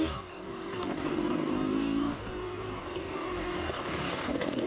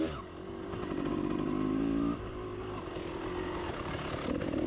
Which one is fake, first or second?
first